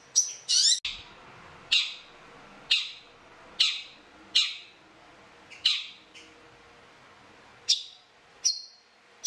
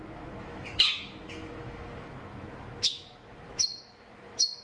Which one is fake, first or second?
second